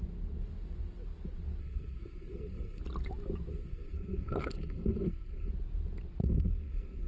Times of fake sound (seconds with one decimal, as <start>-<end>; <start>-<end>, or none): 1.6-2.8; 3.5-5.5; 6.2-7.1

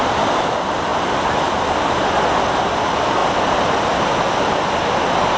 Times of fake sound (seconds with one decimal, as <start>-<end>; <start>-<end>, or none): none

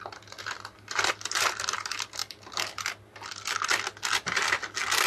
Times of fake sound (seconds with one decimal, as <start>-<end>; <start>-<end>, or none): none

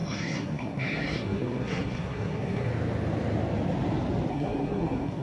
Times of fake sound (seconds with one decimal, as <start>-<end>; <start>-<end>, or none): 0.0-2.7; 4.3-5.2